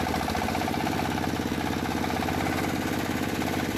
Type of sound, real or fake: real